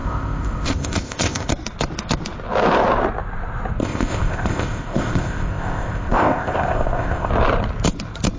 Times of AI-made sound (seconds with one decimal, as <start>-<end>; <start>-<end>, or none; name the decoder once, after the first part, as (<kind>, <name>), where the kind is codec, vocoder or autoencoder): 0.0-1.5 (codec, ZipCodec); 3.8-7.3